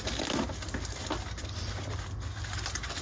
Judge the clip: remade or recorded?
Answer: recorded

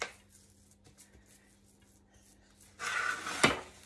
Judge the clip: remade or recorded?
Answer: recorded